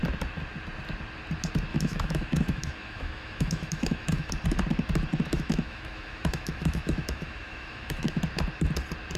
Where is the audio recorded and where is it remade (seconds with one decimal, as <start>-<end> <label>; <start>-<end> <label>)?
0.0-1.7 recorded; 1.7-4.3 remade; 4.3-5.1 recorded; 5.1-8.2 remade; 8.2-9.2 recorded